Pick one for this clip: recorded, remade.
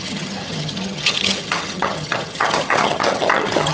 remade